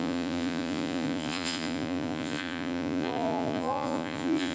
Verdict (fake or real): fake